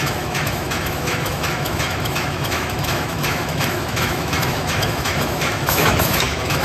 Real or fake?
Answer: fake